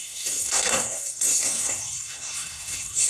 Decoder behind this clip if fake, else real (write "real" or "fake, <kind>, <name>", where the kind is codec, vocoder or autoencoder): fake, codec, SNAC